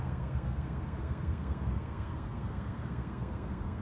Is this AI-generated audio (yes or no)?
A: yes